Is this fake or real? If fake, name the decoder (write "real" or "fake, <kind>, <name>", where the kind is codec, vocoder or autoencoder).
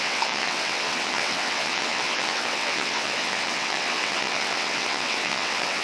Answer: fake, vocoder, WaveNeXt